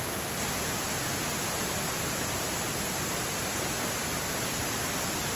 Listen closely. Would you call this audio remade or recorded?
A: recorded